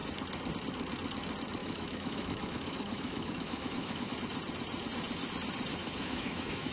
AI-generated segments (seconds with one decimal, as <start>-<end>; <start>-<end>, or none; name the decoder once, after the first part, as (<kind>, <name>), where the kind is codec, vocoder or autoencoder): 1.6-4.1 (autoencoder, DAC-VAE); 5.8-6.7